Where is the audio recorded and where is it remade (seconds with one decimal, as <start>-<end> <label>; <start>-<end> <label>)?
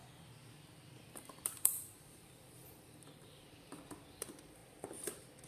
0.0-1.0 recorded; 1.0-4.6 remade; 4.6-5.5 recorded